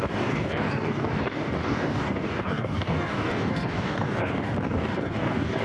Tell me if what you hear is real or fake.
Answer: fake